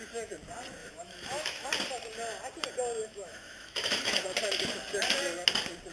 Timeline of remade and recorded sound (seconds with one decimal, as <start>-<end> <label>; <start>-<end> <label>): 0.0-0.8 recorded; 0.8-1.7 remade; 1.7-3.0 recorded; 3.0-4.2 remade; 4.2-5.9 recorded

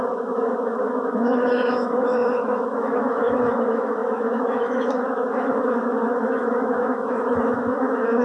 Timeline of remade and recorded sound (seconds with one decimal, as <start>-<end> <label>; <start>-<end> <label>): 0.0-8.2 remade

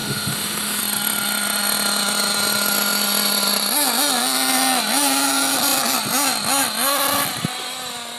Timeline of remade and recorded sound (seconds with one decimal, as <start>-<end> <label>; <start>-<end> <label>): 0.0-0.8 remade; 0.8-8.2 recorded

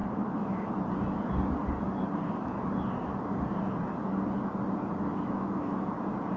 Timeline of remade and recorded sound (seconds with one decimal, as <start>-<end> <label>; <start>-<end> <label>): 0.0-0.7 remade; 0.7-5.1 recorded; 5.1-5.9 remade; 5.9-6.4 recorded

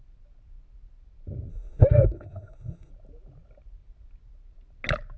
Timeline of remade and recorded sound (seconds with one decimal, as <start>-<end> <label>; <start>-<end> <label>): 0.0-1.5 recorded; 1.5-2.9 remade; 2.9-5.2 recorded

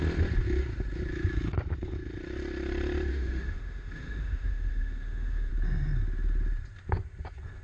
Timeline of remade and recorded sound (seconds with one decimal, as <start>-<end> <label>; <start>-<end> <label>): 0.0-3.1 recorded; 3.1-5.5 remade; 5.5-7.6 recorded